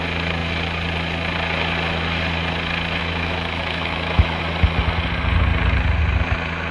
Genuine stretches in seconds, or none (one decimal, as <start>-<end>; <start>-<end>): 0.0-3.0; 4.4-6.7